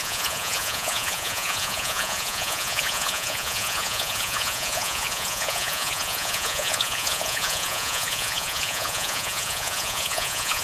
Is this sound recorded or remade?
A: remade